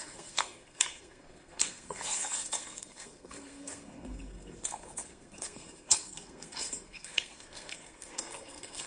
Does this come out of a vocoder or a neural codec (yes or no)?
yes